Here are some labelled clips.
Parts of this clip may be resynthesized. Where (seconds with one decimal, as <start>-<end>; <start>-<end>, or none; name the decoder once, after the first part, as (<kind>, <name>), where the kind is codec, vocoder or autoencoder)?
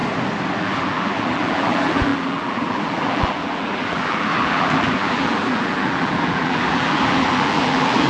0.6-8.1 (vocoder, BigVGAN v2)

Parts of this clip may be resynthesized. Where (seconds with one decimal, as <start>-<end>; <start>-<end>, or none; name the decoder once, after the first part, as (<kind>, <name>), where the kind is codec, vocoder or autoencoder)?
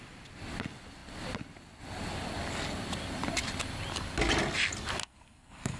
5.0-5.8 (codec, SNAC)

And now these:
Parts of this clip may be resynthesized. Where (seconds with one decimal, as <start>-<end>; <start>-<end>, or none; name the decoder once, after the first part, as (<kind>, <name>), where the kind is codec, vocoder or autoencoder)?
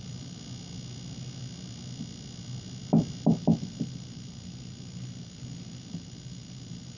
none